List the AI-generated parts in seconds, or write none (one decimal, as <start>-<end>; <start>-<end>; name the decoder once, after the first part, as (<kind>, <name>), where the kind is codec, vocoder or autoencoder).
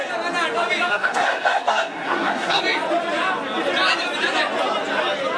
0.9-2.6 (codec, SNAC)